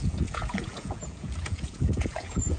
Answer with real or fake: fake